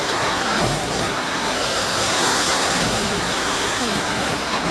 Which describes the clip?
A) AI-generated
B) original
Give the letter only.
A